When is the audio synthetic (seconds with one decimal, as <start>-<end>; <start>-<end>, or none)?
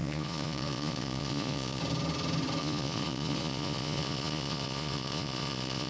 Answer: 0.0-1.8; 2.6-5.9